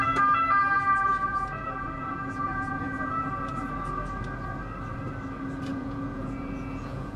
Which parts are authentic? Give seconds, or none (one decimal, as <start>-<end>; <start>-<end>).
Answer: 0.0-1.3; 3.3-5.7